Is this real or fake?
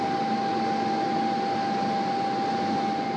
real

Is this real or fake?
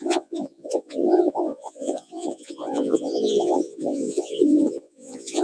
fake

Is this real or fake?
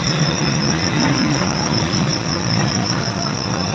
fake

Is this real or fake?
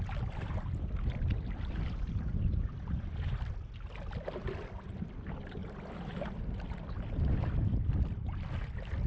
real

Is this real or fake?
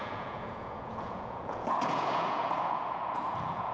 fake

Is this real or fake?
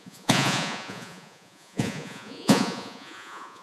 fake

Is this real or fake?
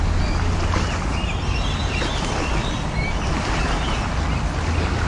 real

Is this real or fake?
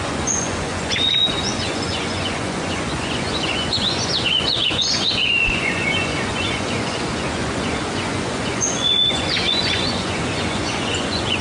fake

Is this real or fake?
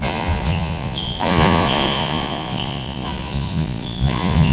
fake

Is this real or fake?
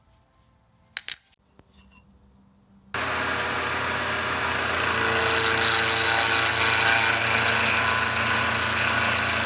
real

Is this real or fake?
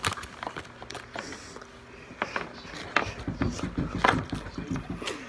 real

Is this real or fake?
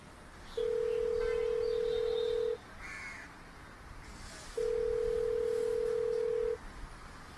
real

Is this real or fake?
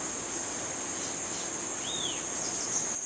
real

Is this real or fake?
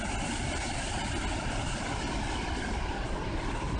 real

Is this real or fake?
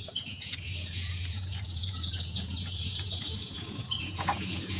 fake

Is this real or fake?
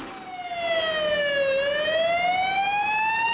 real